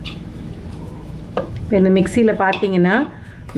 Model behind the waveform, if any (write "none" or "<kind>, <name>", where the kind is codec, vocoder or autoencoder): autoencoder, DAC-VAE